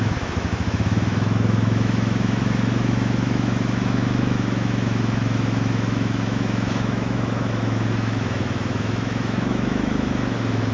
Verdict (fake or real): fake